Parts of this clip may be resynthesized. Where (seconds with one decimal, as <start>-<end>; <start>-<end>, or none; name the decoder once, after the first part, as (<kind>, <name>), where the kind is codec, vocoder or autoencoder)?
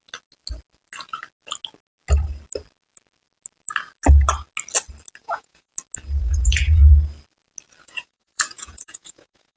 5.2-5.7 (vocoder, Vocos); 6.2-6.8; 7.8-9.6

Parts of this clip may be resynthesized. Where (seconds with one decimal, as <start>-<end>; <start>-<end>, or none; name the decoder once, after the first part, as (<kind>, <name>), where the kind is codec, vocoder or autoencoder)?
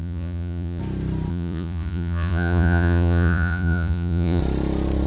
0.0-0.8 (vocoder, Vocos); 1.3-4.4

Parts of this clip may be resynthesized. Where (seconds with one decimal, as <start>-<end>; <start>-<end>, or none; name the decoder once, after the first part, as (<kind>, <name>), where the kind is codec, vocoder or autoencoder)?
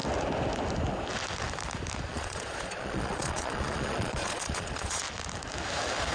2.1-5.0 (vocoder, Vocos)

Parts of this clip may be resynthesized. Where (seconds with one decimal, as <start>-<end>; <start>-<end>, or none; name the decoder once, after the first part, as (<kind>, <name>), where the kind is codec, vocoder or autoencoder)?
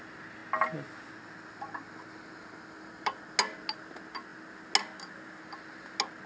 none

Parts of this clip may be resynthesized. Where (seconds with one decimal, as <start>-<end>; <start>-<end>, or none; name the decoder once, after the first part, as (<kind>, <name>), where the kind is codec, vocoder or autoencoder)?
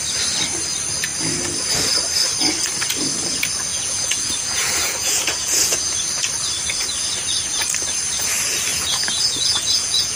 3.7-5.8 (vocoder, Vocos); 8.7-10.2